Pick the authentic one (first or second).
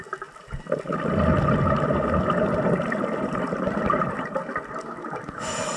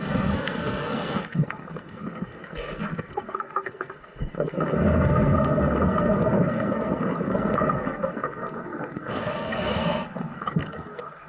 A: first